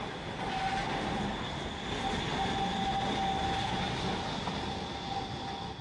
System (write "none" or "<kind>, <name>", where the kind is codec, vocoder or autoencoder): none